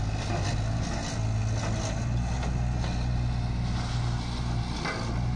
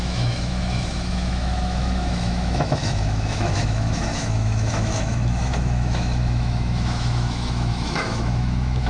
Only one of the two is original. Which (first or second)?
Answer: first